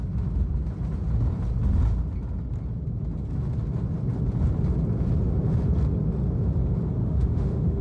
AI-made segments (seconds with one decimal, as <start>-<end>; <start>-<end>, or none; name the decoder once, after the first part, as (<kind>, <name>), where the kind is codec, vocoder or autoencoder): 7.0-7.8 (autoencoder, DAC-VAE)